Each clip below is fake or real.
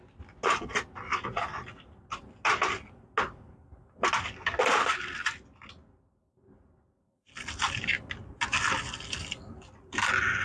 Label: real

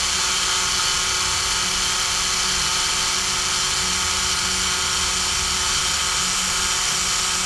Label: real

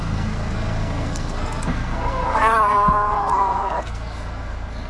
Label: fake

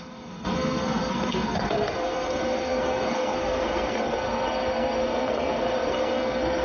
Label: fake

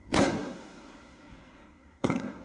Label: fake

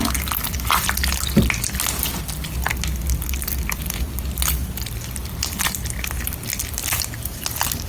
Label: real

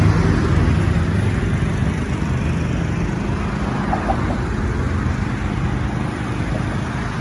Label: real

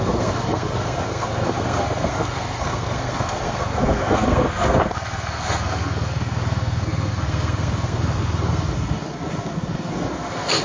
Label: fake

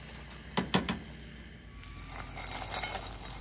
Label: real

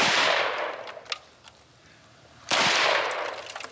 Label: real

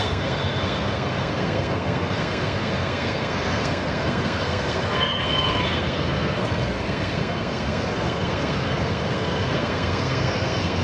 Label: fake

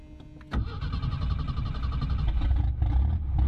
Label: real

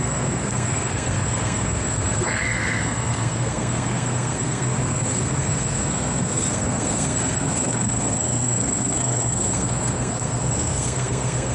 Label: fake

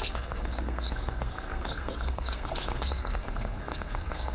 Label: fake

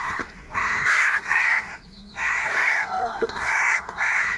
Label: fake